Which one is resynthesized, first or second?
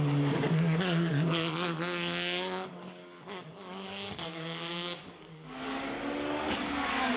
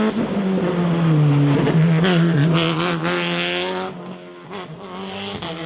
first